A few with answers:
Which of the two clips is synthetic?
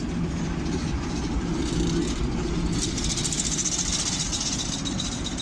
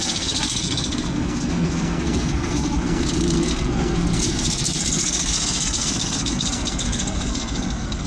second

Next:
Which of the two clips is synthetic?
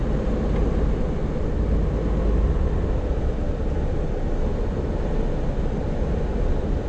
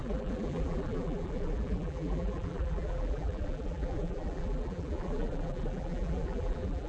second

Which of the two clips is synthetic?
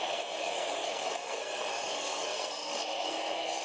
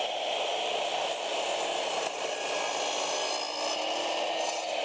first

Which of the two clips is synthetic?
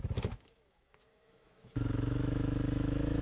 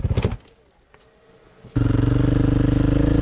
first